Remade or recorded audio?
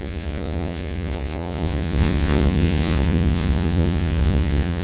remade